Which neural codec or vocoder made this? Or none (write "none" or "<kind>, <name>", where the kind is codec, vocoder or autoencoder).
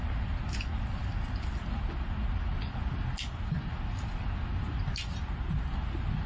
none